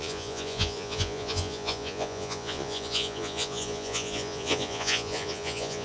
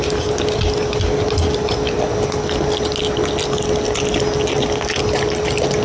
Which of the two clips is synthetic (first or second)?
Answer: first